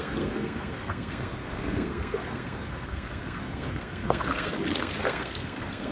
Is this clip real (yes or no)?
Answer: no